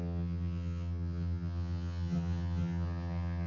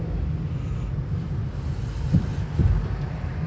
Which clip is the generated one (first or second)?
first